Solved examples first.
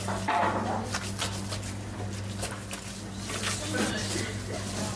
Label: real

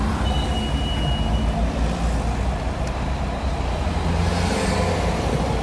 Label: real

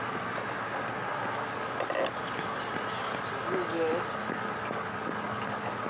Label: real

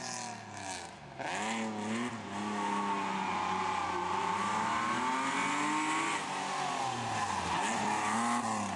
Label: real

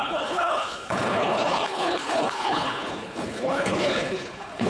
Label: fake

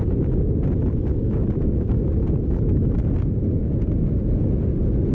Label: real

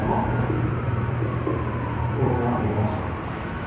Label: fake